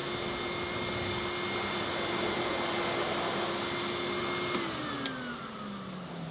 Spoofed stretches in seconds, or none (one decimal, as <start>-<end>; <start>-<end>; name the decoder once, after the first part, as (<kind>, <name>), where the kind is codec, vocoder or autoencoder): none